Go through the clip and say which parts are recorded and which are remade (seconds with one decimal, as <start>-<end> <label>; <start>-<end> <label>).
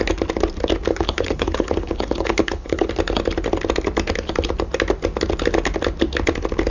0.0-0.9 recorded; 0.9-2.9 remade; 2.9-6.7 recorded